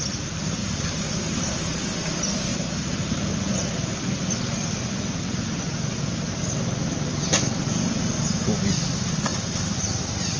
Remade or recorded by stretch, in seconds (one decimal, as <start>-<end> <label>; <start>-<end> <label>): 0.0-0.6 recorded; 0.6-1.5 remade; 1.5-2.5 recorded; 2.5-3.3 remade; 3.3-9.3 recorded; 9.3-10.0 remade; 10.0-10.4 recorded